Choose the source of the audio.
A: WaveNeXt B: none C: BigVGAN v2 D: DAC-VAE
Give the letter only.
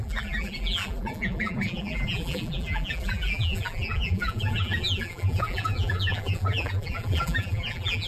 C